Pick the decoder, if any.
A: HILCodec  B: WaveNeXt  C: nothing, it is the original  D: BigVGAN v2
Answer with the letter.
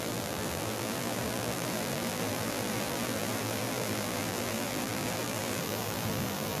D